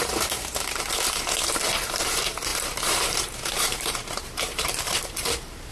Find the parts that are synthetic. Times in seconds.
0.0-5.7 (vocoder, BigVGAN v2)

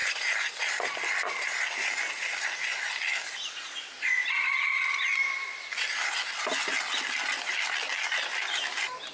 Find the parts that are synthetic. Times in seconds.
0.0-0.6 (vocoder, BigVGAN v2)

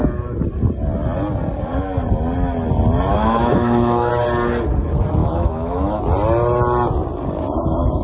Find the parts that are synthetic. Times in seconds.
3.1-4.1 (autoencoder, DAC-VAE); 5.2-6.0

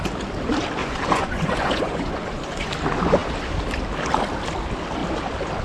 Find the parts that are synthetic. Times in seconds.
0.8-2.7 (vocoder, Vocos)

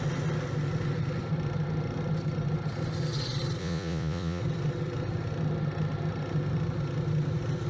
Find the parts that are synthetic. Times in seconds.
3.6-4.4 (vocoder, Vocos)